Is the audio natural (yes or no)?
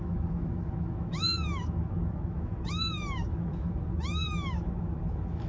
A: no